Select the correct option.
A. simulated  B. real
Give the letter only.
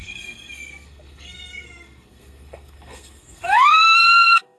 A